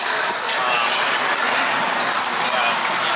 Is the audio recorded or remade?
recorded